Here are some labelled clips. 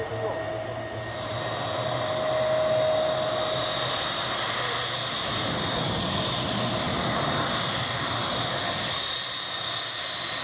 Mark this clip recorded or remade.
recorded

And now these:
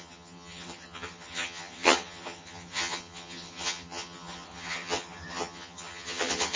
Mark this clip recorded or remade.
remade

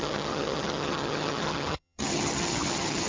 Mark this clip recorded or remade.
remade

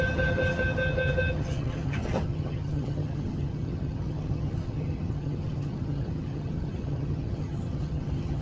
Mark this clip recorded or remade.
remade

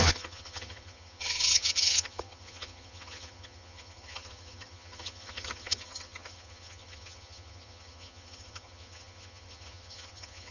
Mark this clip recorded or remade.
remade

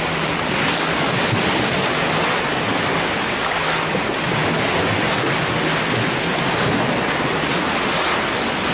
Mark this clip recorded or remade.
recorded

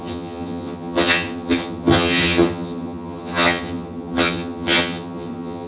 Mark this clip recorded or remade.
remade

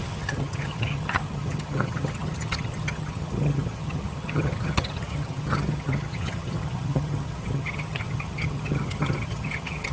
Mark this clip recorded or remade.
remade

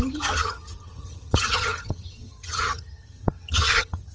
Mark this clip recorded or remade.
remade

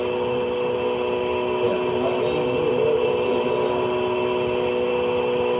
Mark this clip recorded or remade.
recorded